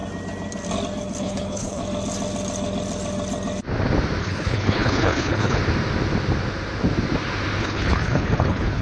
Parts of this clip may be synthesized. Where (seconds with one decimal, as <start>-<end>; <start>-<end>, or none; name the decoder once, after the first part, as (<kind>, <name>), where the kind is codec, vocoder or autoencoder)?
1.2-1.8 (codec, HILCodec); 4.2-5.6; 7.6-8.8